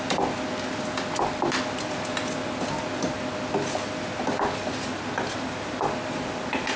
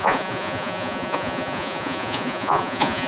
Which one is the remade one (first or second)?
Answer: second